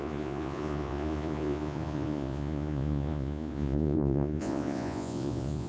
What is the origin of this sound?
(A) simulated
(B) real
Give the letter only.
A